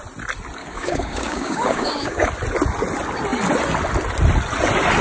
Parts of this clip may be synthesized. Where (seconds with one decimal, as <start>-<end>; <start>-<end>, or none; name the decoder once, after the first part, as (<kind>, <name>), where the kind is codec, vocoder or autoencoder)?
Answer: 0.6-2.3 (codec, DAC)